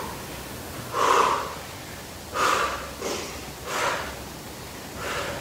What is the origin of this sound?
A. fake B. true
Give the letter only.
B